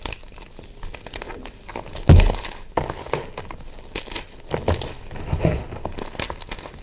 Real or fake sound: real